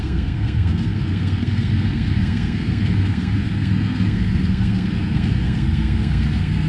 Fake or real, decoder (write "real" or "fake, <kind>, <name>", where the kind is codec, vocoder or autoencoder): fake, codec, SNAC